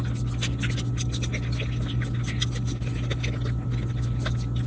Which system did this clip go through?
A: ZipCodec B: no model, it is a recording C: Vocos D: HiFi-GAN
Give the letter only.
B